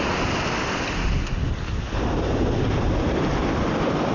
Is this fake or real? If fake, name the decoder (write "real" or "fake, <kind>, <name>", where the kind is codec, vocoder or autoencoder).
real